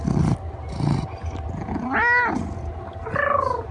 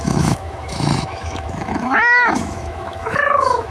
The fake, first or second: second